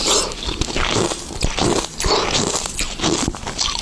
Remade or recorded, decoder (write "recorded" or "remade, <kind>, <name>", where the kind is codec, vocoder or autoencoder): recorded